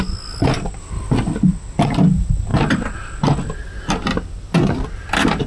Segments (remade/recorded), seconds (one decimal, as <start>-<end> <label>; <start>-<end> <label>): 0.0-5.5 recorded